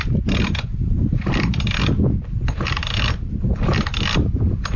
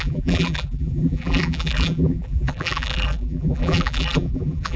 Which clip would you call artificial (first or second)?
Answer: second